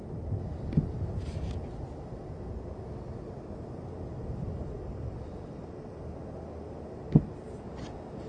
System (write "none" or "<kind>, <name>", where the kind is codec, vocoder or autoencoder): none